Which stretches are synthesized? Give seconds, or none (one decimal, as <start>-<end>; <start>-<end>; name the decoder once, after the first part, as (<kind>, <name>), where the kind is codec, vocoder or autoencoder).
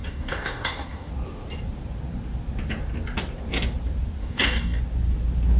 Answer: 0.0-1.1 (codec, DAC); 4.2-4.8